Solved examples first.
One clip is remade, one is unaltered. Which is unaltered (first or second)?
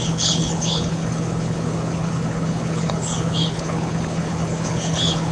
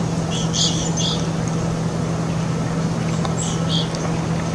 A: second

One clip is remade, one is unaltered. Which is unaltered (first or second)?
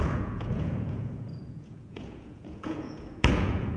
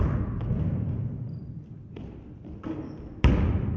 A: second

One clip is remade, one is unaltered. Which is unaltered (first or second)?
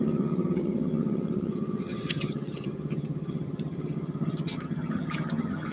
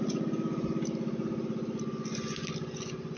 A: second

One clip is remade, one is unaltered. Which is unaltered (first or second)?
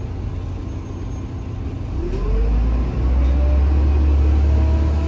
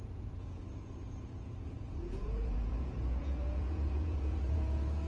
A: first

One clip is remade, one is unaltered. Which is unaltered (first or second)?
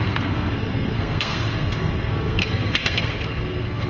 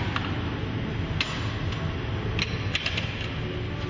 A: second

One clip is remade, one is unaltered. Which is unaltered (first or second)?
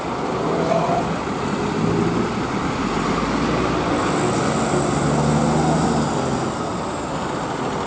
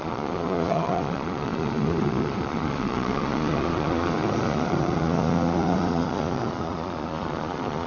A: first